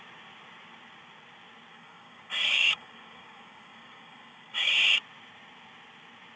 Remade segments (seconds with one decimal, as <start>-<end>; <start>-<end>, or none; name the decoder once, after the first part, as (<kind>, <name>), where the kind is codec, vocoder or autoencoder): 1.7-4.7 (codec, DAC)